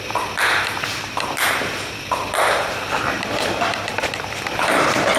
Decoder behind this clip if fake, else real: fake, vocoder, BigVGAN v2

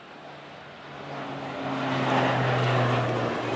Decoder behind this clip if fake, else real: real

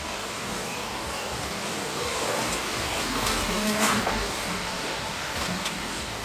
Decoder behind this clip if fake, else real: fake, codec, DAC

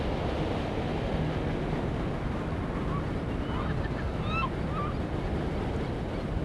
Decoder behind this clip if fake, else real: real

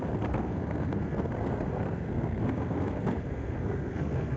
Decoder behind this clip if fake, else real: fake, codec, SNAC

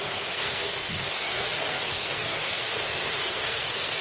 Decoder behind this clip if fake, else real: fake, codec, SNAC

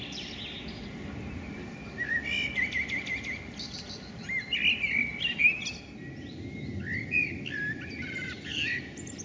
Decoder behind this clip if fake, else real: real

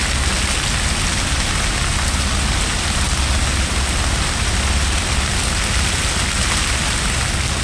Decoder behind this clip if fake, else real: real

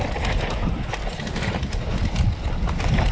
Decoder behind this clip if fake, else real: real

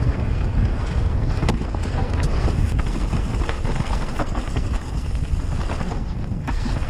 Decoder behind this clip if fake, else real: fake, codec, SNAC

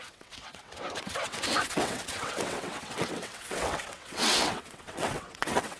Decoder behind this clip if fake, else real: fake, vocoder, WaveNeXt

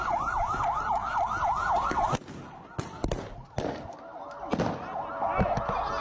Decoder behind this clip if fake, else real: real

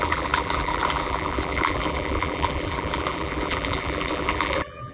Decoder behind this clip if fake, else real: fake, vocoder, BigVGAN v2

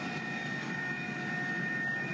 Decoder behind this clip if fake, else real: real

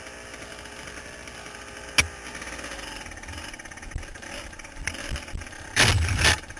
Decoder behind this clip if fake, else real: real